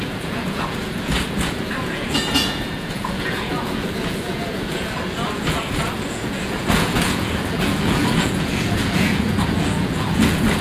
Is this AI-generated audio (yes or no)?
yes